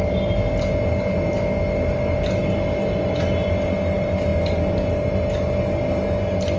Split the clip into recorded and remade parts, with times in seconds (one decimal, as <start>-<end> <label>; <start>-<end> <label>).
0.0-6.6 recorded